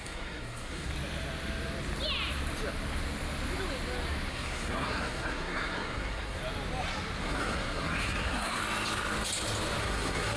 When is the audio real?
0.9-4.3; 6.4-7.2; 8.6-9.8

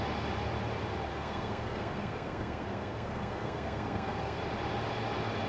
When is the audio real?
0.0-1.1; 4.4-5.5

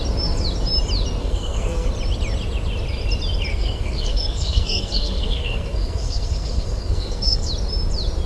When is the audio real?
0.0-1.2; 1.9-3.5; 7.5-8.3

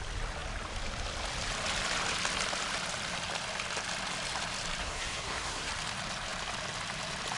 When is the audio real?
0.0-4.8; 5.7-7.4

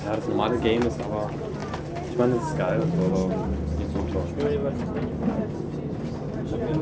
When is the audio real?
0.0-6.8